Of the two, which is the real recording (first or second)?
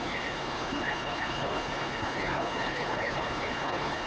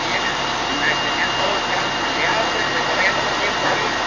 second